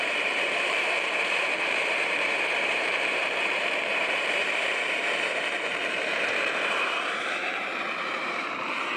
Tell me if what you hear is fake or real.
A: fake